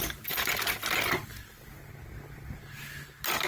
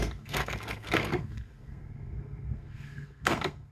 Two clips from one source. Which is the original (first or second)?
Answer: first